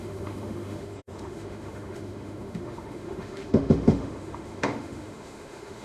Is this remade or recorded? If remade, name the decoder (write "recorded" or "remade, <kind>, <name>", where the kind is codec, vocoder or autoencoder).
remade, autoencoder, DAC-VAE